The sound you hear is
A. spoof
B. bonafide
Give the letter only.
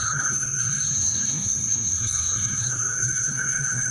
A